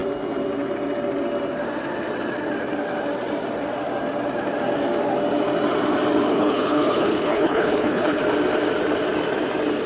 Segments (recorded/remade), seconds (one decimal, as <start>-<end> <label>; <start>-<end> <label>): 0.0-6.3 recorded; 6.3-8.2 remade; 8.2-9.9 recorded